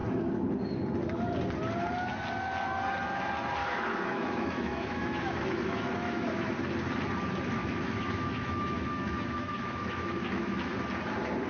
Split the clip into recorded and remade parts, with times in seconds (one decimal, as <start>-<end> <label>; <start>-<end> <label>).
0.0-3.6 recorded; 3.6-6.5 remade; 6.5-7.6 recorded; 7.6-10.7 remade; 10.7-11.5 recorded